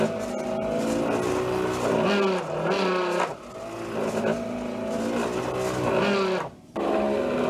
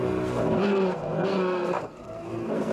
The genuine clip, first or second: first